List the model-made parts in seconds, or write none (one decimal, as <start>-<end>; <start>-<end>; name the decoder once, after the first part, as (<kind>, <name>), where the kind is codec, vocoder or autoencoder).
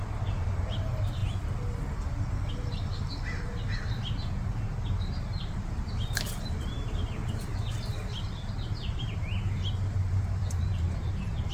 0.0-1.2 (vocoder, BigVGAN v2); 2.5-11.5